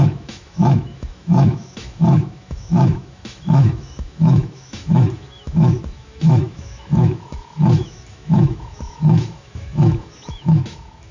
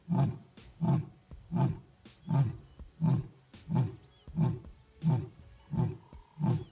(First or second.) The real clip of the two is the second